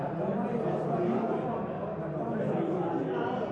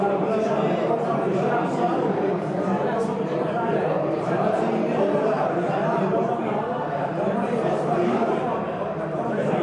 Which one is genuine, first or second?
first